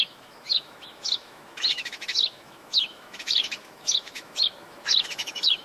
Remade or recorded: remade